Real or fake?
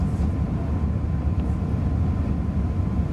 real